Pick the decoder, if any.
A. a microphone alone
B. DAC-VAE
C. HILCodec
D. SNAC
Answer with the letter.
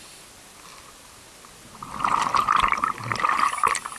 A